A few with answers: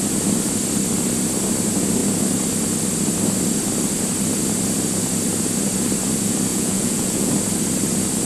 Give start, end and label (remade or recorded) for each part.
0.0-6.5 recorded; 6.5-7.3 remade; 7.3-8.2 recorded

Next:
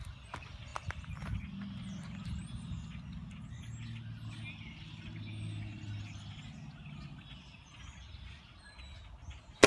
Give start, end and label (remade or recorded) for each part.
0.0-9.7 recorded

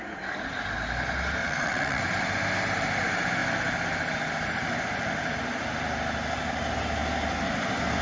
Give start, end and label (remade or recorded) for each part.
0.0-1.4 recorded; 1.4-2.0 remade; 2.0-8.0 recorded

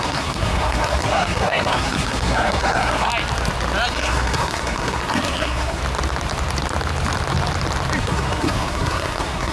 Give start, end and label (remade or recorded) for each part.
0.0-3.1 remade; 3.1-3.9 recorded; 3.9-5.8 remade; 5.8-8.0 recorded; 8.0-9.5 remade

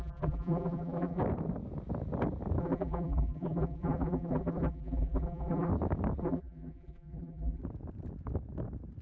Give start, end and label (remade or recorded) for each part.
0.0-1.2 remade; 1.2-2.6 recorded; 2.6-5.7 remade; 5.7-6.2 recorded; 6.2-7.6 remade; 7.6-9.0 recorded

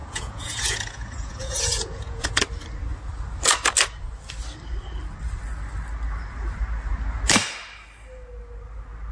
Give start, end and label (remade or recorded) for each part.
0.0-2.4 remade; 2.4-9.1 recorded

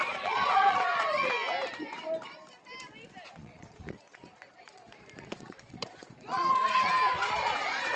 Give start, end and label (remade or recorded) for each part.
0.0-1.3 remade; 1.3-3.3 recorded; 3.3-8.0 remade